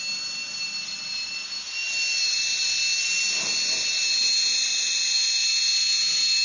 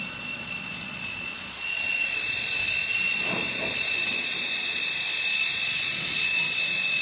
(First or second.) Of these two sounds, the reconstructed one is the second